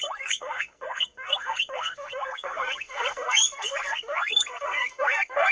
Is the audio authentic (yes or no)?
no